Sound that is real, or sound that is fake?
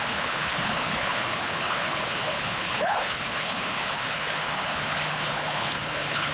fake